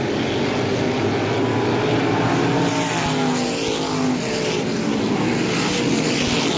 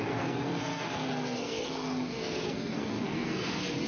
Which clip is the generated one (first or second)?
second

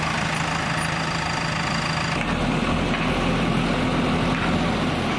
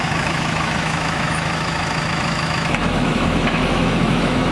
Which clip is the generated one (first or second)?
second